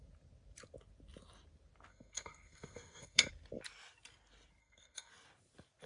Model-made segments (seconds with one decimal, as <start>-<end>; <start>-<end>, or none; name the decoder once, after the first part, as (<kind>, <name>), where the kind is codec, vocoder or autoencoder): 1.9-3.3 (codec, SNAC); 4.6-5.1